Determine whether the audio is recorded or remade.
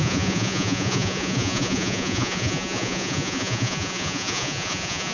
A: remade